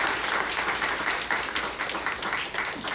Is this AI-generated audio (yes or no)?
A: no